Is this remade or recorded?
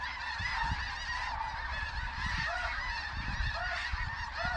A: remade